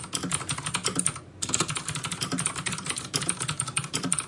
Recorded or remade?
recorded